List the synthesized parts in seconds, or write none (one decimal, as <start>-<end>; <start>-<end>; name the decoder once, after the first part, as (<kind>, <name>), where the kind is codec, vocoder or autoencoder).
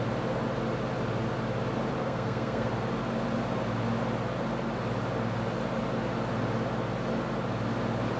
2.0-2.7 (codec, SNAC)